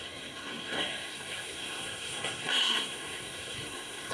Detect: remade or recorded remade